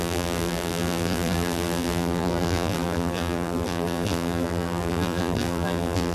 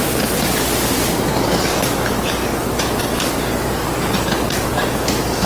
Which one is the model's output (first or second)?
first